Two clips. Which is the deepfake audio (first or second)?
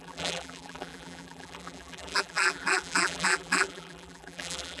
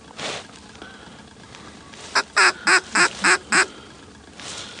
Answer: first